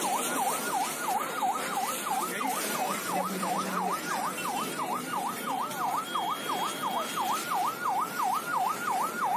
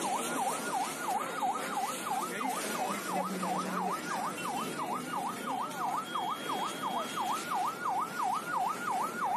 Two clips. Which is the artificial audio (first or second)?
first